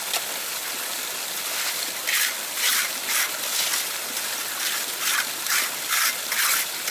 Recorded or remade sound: recorded